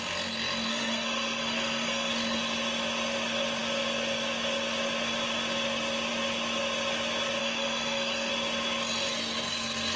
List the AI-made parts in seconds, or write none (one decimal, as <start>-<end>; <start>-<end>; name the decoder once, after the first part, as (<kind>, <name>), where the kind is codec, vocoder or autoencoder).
0.7-2.1 (codec, SNAC); 7.4-8.3; 9.1-10.0